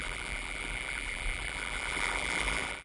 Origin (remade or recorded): remade